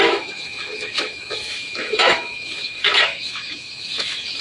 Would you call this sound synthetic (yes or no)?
yes